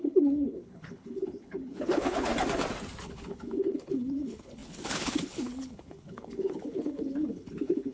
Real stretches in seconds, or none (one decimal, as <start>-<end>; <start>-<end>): 2.3-3.0